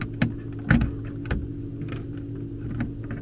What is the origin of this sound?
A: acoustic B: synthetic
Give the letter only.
A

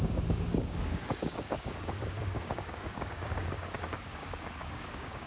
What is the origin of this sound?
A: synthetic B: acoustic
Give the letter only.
A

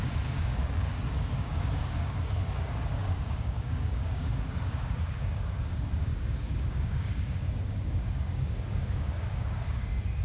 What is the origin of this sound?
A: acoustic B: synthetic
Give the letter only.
B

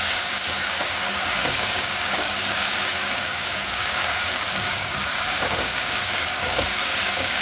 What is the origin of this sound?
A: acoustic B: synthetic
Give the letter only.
B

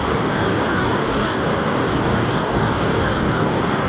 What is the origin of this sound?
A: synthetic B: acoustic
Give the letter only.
A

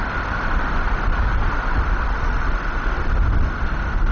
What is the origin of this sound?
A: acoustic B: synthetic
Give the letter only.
A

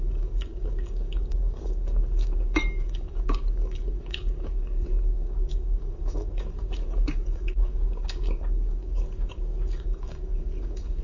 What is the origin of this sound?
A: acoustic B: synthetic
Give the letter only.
B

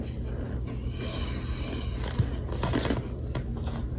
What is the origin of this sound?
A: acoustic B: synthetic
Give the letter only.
A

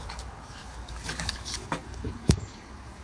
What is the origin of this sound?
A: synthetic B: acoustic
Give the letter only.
A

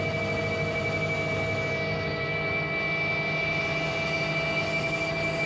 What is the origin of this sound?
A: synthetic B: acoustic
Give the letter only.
B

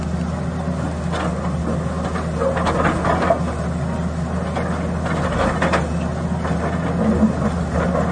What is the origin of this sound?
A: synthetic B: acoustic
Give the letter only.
B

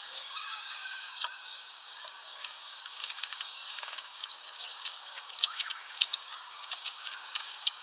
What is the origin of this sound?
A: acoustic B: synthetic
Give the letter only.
B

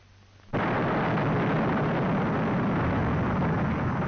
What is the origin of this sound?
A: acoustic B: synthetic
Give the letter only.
A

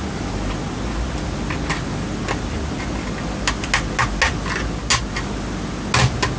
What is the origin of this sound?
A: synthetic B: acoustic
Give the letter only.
B